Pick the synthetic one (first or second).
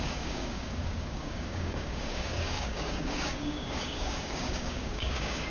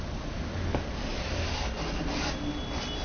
first